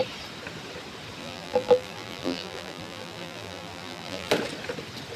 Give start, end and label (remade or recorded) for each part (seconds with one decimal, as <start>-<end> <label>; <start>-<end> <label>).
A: 0.0-1.2 recorded; 1.2-4.3 remade; 4.3-5.2 recorded